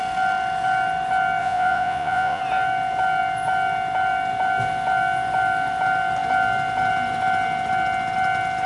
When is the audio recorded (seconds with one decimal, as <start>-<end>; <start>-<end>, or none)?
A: 0.0-1.4; 2.4-8.7